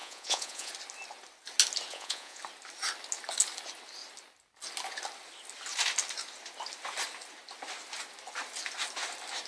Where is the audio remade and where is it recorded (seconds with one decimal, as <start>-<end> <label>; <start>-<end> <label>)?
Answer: 0.0-0.7 remade; 0.7-1.9 recorded; 1.9-2.4 remade; 2.4-9.5 recorded